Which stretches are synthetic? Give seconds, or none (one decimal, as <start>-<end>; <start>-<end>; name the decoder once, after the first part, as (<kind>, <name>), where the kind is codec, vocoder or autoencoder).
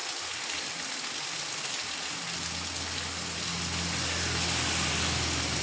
none